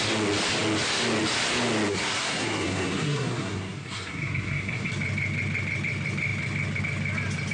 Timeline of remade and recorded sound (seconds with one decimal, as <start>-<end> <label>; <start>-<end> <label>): 0.0-1.9 recorded; 1.9-4.9 remade; 4.9-7.5 recorded